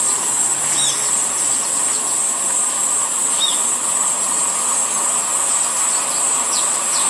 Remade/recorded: recorded